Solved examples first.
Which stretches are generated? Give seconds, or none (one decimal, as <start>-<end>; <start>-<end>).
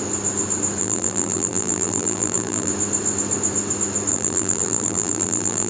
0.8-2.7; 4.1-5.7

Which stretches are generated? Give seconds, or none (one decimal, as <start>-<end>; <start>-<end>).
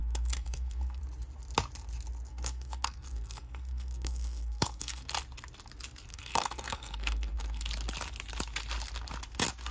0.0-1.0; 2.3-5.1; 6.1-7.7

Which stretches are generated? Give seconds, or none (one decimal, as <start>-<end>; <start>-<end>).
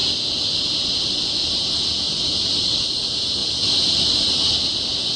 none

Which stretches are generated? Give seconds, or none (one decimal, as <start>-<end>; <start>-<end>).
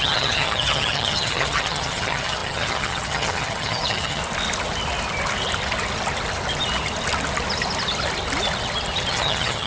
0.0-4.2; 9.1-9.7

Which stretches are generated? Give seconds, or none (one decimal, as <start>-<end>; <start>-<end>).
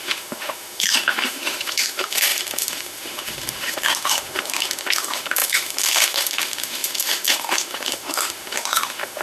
0.0-9.2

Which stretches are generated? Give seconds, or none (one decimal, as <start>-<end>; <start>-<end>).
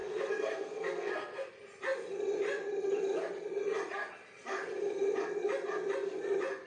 0.0-1.5